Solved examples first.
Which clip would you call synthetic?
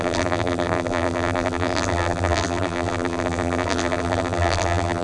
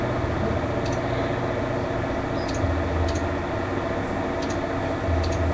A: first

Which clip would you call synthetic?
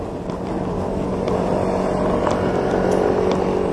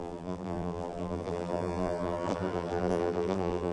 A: second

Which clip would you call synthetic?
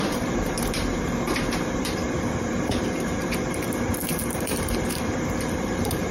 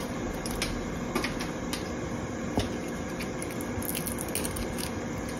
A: first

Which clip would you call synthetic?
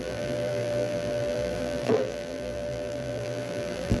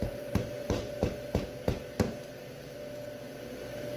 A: first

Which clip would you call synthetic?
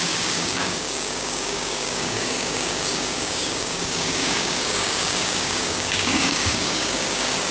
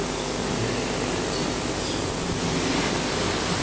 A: first